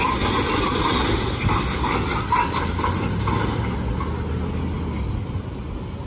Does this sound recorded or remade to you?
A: recorded